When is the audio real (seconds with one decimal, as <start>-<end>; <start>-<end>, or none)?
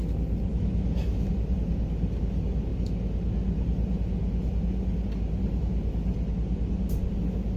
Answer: 0.0-0.5; 1.3-7.6